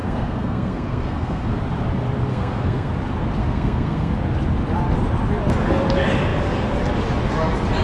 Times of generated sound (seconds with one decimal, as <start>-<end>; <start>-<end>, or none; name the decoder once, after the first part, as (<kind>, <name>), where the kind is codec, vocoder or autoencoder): 0.0-1.6 (codec, SNAC); 2.3-2.9; 3.4-4.1